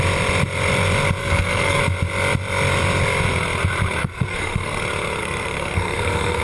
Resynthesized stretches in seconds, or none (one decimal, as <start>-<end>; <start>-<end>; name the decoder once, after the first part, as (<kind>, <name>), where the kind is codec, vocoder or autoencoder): 1.2-1.8 (codec, SNAC); 4.0-4.8; 5.2-6.4

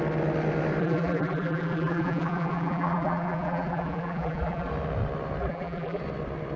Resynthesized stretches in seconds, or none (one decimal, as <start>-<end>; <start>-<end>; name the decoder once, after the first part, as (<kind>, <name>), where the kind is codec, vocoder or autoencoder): 0.8-4.7 (vocoder, BigVGAN v2); 5.4-6.0

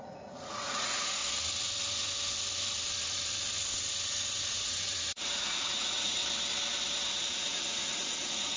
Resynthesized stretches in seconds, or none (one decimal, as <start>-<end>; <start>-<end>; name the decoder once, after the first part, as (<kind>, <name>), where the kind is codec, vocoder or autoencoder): 0.0-1.2 (vocoder, Vocos); 4.6-6.2; 7.2-8.6

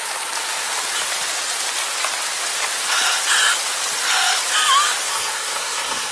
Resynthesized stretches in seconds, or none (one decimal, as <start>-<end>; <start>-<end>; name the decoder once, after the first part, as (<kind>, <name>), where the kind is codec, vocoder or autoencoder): 5.1-6.1 (codec, SNAC)

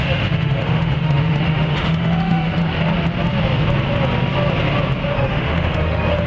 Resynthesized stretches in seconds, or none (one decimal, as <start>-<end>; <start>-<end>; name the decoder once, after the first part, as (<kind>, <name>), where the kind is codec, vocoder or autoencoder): 0.0-2.6 (autoencoder, DAC-VAE); 5.1-6.3

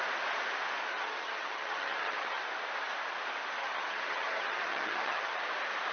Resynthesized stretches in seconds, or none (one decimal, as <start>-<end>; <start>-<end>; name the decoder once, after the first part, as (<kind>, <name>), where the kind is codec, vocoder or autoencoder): 0.9-2.4 (vocoder, HiFi-GAN); 3.6-5.4

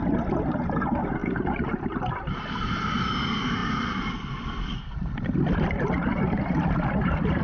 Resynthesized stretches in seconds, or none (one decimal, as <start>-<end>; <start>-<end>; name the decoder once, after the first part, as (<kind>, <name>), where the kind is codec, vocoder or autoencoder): 3.6-7.4 (vocoder, BigVGAN v2)

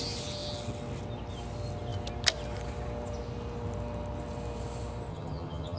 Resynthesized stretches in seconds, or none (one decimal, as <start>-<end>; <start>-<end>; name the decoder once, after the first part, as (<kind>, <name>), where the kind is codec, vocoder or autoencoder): 5.1-5.8 (vocoder, HiFi-GAN)